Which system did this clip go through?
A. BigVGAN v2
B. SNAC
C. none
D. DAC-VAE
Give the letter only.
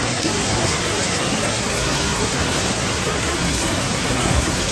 B